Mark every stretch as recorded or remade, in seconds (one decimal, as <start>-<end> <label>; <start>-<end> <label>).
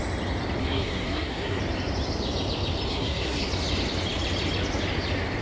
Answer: 0.0-0.6 recorded; 0.6-1.6 remade; 1.6-2.9 recorded; 2.9-3.4 remade; 3.4-5.4 recorded